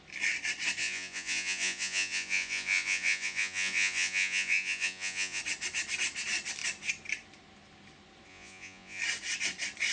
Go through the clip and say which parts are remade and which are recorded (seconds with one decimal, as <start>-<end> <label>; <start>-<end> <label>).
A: 0.0-0.8 recorded; 0.8-5.4 remade; 5.4-8.3 recorded; 8.3-9.0 remade; 9.0-9.9 recorded